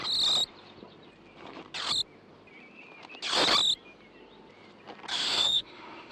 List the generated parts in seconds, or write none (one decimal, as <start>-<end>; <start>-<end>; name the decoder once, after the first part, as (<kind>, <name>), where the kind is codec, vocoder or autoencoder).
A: 5.1-6.1 (autoencoder, DAC-VAE)

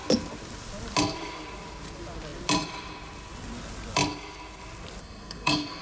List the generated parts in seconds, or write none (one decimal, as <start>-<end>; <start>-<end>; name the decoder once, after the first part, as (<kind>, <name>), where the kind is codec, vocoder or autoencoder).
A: 5.0-5.8 (codec, SNAC)

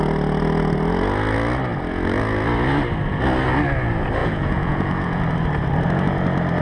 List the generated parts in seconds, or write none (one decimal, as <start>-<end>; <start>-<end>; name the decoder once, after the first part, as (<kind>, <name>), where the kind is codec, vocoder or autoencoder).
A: 4.2-5.2 (vocoder, Vocos)

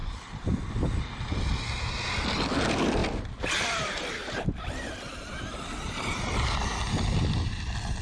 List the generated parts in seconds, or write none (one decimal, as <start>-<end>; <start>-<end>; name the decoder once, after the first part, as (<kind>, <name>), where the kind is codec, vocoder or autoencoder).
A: 3.0-5.3 (vocoder, BigVGAN v2)